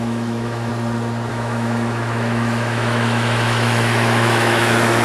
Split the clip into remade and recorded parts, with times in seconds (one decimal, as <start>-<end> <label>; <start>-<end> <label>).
0.0-0.7 remade; 0.7-1.3 recorded; 1.3-5.0 remade